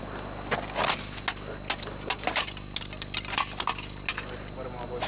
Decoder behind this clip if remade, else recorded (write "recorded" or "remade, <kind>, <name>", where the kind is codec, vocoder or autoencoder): recorded